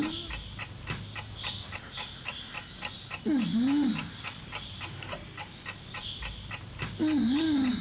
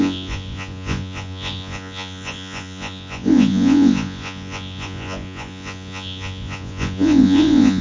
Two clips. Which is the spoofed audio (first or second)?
second